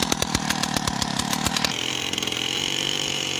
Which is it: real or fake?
fake